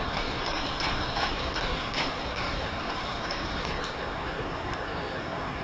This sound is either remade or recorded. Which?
remade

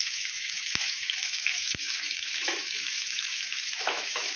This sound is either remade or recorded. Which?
remade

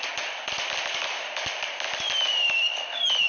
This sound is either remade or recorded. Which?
recorded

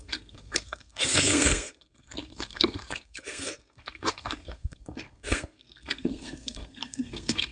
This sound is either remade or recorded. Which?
remade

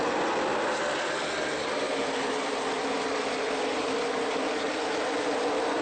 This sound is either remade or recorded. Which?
recorded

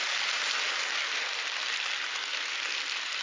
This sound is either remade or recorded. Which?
recorded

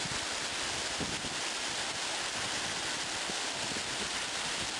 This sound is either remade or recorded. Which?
recorded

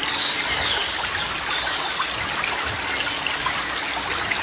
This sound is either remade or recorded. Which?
recorded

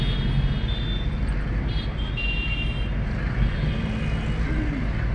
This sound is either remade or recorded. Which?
recorded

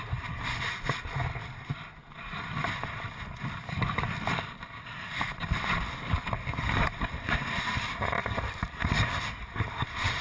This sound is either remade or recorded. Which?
recorded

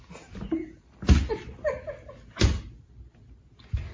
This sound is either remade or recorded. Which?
recorded